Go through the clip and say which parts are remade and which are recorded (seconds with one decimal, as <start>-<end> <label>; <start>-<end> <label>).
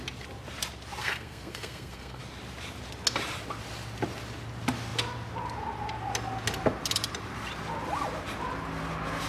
0.0-1.0 recorded; 1.0-2.2 remade; 2.2-9.3 recorded